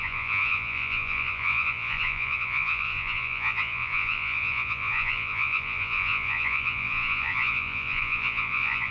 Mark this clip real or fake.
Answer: fake